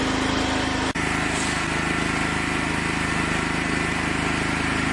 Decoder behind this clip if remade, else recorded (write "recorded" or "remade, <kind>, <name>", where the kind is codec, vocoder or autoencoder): recorded